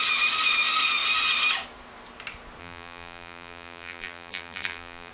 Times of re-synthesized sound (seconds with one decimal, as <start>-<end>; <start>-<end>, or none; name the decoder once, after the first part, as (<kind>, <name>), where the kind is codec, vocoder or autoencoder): 2.6-5.1 (vocoder, BigVGAN v2)